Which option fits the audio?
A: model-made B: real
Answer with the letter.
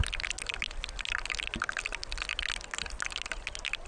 B